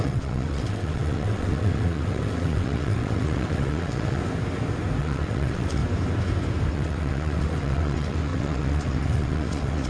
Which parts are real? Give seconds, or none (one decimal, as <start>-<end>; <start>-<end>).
4.2-5.0; 5.8-6.7

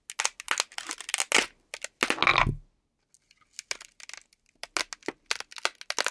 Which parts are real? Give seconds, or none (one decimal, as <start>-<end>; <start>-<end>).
0.0-6.1

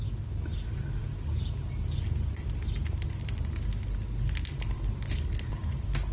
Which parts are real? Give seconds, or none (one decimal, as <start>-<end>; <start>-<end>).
0.0-6.1

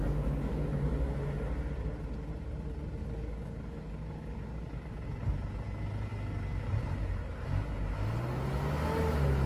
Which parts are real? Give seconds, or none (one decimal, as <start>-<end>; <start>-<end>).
1.2-3.0; 4.9-9.5